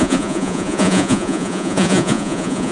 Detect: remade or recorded remade